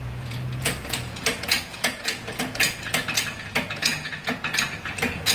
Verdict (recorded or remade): remade